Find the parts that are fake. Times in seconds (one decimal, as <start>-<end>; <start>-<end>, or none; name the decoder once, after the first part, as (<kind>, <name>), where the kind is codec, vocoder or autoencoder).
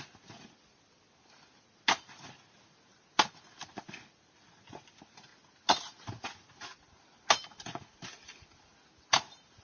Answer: none